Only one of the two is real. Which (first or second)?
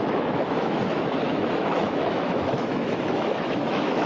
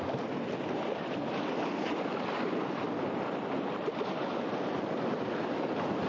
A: second